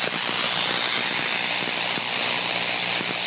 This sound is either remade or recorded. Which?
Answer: recorded